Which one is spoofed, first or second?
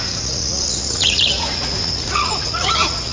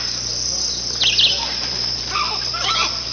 first